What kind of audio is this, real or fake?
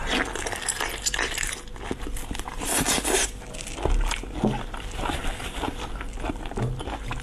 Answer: real